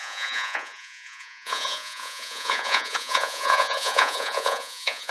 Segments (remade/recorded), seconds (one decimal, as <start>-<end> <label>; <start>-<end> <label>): 0.0-5.1 remade